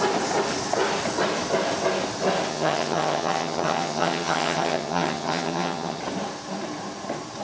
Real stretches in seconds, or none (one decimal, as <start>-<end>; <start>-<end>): 0.0-2.5; 6.0-7.4